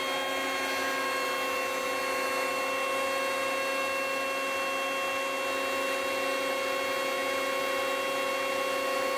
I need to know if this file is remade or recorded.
recorded